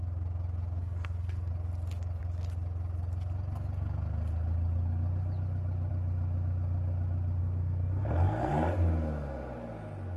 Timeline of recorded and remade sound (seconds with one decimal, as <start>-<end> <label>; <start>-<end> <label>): 0.0-0.8 recorded; 0.8-1.5 remade; 1.5-7.4 recorded; 7.4-8.5 remade; 8.5-10.2 recorded